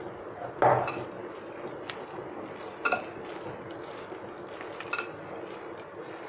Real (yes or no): yes